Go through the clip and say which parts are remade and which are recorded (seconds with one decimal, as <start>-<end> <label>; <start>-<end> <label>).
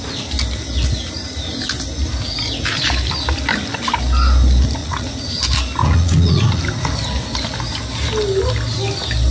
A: 0.0-4.8 recorded; 4.8-5.3 remade; 5.3-5.8 recorded; 5.8-6.6 remade; 6.6-9.3 recorded